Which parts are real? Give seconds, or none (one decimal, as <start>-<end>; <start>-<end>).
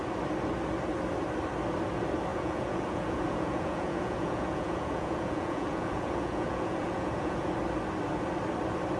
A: 0.0-2.3; 7.5-9.0